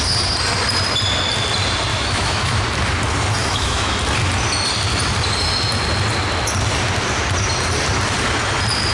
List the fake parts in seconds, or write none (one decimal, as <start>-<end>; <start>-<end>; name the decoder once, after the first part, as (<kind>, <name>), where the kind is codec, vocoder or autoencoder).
1.9-2.6 (autoencoder, DAC-VAE); 3.4-3.9